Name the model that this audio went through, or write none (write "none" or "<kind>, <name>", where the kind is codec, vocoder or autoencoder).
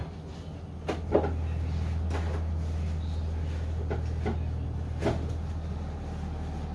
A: none